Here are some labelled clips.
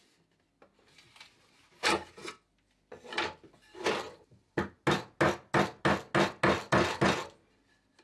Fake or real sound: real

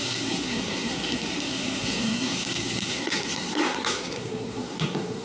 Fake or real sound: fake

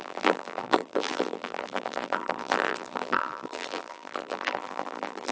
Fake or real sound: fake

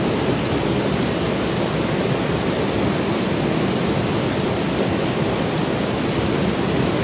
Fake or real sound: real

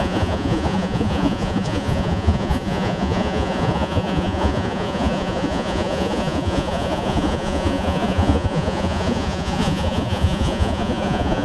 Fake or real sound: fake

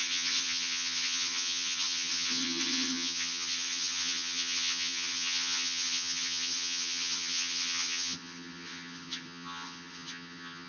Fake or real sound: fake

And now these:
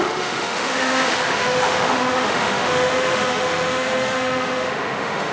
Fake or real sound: fake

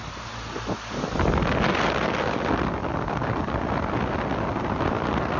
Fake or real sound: real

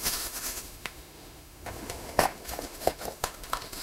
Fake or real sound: fake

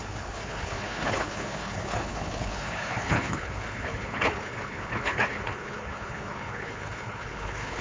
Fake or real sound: fake